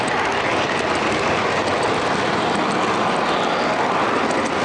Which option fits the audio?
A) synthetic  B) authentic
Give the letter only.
A